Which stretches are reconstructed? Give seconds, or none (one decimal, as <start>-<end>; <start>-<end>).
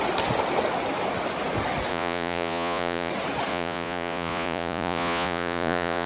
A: 1.9-3.1; 3.5-6.1